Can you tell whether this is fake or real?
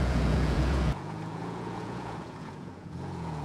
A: fake